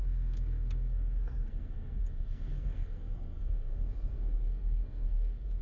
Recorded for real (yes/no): no